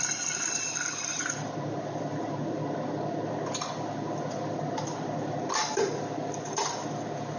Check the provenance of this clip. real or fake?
real